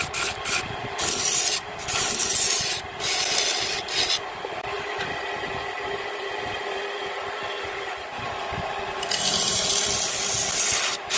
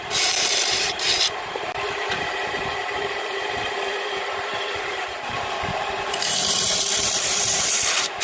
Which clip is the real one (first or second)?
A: first